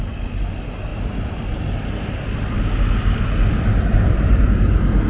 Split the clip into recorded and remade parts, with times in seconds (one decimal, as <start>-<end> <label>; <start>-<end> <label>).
0.0-5.1 recorded